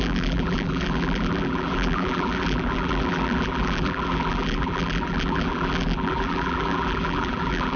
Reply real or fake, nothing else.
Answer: fake